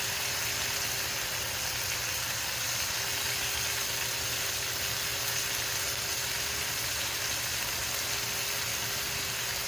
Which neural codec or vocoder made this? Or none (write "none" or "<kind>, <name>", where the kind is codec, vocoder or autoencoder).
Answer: none